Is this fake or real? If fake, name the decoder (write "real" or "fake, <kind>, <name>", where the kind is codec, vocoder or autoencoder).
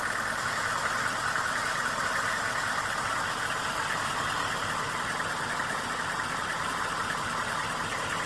real